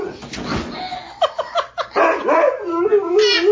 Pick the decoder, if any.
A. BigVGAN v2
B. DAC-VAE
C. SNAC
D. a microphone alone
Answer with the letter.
D